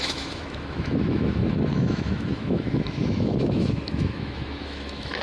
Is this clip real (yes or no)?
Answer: no